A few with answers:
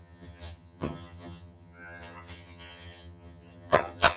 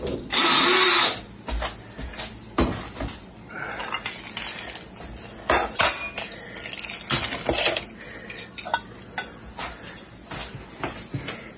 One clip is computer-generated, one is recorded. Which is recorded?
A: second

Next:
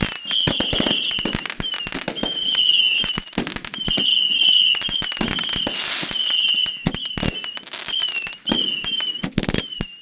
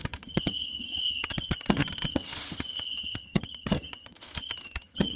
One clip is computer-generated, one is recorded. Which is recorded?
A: first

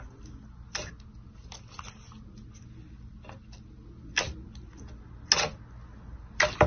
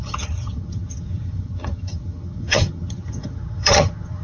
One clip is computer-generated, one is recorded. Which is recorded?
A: first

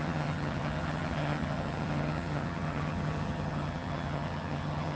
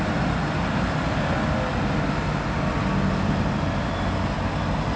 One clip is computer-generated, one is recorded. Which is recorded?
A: second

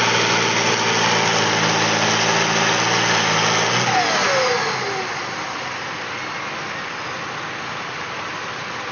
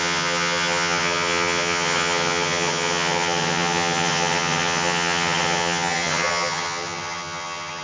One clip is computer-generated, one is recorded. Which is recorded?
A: first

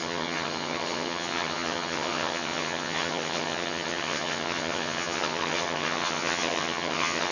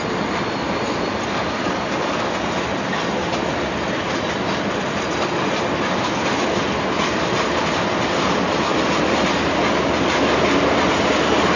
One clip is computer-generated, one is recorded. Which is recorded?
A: second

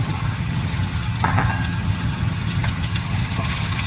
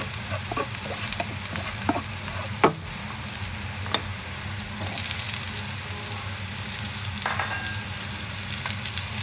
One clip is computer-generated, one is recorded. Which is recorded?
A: second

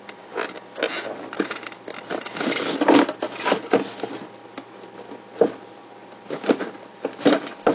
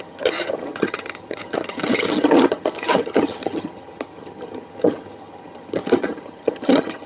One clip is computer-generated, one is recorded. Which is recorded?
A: first